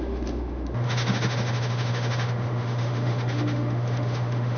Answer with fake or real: fake